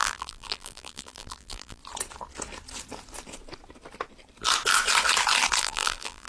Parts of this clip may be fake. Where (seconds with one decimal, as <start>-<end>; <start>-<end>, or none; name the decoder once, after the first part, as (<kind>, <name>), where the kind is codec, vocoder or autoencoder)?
0.0-1.8 (vocoder, BigVGAN v2); 5.6-6.3